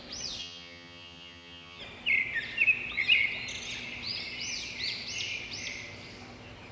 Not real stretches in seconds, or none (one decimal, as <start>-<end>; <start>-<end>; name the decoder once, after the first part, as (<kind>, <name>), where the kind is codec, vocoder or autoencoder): 0.4-1.8 (vocoder, HiFi-GAN)